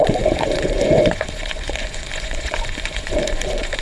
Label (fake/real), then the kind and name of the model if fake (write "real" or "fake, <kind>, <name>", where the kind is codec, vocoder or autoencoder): fake, vocoder, Vocos